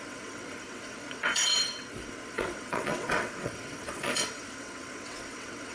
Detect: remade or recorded remade